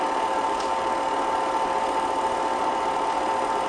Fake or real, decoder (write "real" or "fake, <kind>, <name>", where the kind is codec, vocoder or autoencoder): real